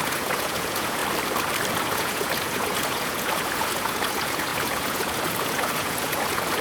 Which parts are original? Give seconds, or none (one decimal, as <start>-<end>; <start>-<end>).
1.0-1.7